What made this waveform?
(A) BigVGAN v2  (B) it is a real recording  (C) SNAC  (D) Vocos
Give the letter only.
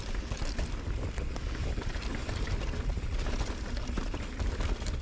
A